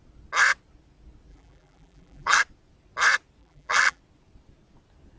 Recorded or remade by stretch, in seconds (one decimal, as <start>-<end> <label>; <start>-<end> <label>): 0.0-1.3 recorded; 1.3-2.4 remade; 2.4-3.4 recorded; 3.4-4.0 remade; 4.0-5.2 recorded